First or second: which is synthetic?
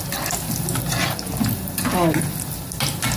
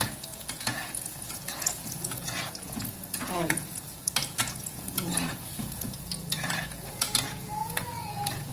second